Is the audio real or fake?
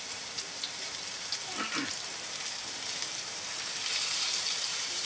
fake